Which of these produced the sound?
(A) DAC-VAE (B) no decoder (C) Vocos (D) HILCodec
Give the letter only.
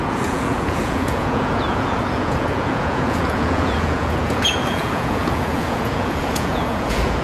C